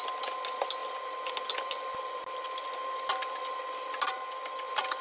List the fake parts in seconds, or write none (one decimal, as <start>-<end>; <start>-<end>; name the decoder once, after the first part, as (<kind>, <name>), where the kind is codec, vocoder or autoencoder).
none